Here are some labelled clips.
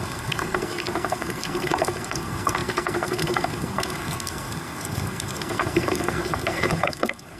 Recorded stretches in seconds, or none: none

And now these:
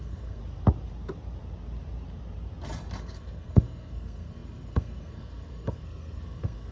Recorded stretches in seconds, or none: 0.4-3.0

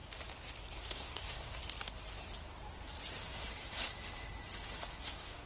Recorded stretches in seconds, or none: 0.0-0.7; 1.6-4.9

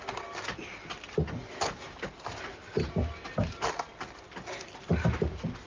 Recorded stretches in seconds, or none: 0.0-5.7

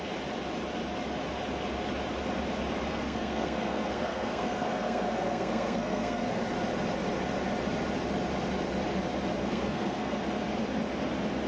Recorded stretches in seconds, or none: 0.0-2.9; 6.4-9.4; 10.2-11.5

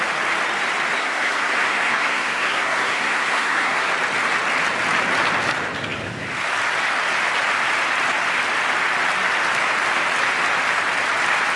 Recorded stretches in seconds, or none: 0.0-1.0; 3.9-11.6

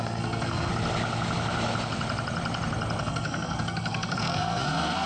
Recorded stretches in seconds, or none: 0.7-3.0

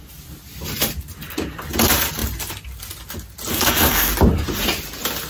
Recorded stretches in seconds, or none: 0.0-3.5; 4.1-5.3